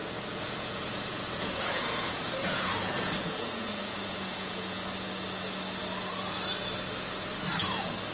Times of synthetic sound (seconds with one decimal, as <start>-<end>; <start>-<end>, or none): 0.0-4.9